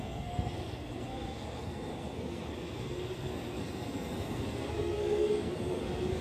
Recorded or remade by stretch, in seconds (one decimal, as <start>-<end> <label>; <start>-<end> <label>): 0.0-6.2 remade